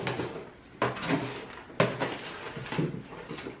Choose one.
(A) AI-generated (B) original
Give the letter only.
B